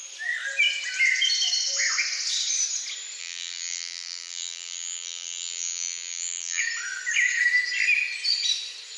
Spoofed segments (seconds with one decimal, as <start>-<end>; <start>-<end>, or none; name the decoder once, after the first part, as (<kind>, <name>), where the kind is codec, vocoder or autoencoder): 3.2-6.6 (vocoder, BigVGAN v2)